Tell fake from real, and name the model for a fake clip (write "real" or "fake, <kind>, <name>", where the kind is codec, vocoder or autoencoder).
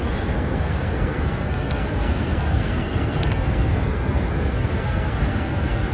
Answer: fake, codec, SNAC